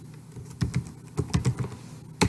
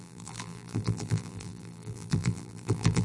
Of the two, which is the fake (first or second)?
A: second